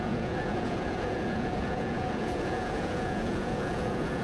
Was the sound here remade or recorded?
remade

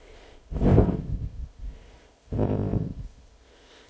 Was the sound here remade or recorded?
remade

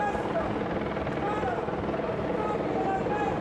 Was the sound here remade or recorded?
recorded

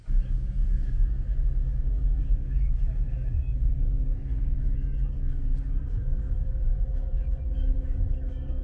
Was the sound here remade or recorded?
remade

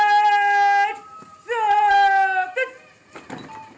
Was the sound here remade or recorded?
recorded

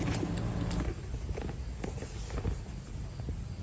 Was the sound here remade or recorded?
recorded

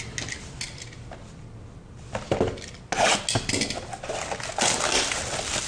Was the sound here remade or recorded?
recorded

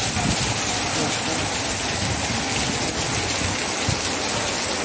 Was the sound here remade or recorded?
recorded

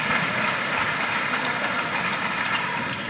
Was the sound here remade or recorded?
recorded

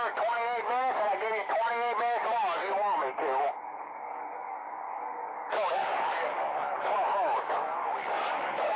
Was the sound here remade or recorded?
remade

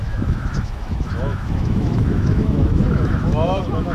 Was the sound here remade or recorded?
remade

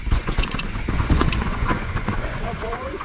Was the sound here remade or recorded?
remade